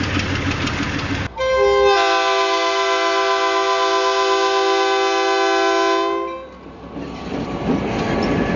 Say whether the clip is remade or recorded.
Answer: recorded